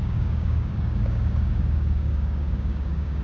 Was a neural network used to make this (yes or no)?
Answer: yes